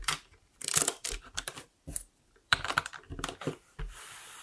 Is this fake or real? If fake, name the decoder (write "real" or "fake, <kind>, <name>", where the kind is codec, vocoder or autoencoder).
fake, vocoder, BigVGAN v2